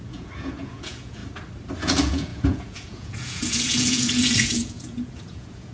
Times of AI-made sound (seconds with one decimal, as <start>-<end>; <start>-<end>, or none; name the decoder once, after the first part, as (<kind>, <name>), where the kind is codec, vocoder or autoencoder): 0.0-1.2 (vocoder, Vocos); 1.8-5.7